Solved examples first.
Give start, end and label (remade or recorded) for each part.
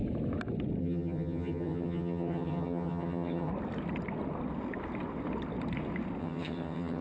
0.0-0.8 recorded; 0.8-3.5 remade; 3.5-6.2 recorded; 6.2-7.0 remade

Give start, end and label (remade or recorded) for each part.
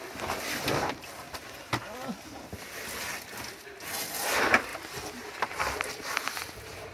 0.0-6.9 recorded